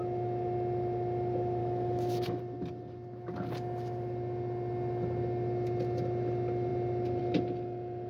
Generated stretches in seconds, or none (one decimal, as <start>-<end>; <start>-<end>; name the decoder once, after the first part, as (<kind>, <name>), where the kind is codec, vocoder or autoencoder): 1.6-2.4 (autoencoder, DAC-VAE)